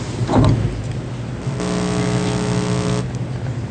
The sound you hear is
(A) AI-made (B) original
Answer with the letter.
B